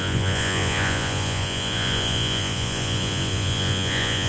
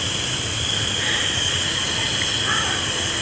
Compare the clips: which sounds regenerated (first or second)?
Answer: first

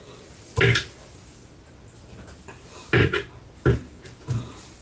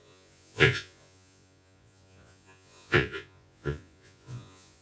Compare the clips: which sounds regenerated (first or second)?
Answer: second